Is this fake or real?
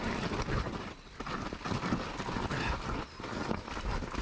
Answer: real